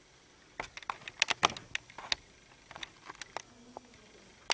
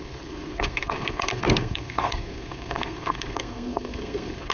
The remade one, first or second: second